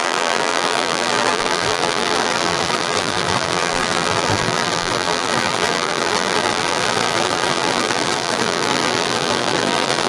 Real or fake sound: fake